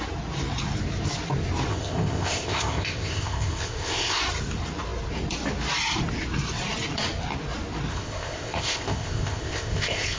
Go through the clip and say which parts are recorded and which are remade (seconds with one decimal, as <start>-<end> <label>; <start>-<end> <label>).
0.0-1.7 recorded; 1.7-4.2 remade; 4.2-7.9 recorded; 7.9-10.2 remade